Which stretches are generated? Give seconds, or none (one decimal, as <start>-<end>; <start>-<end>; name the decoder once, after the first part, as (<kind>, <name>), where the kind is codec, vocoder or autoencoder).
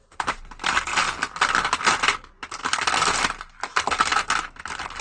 none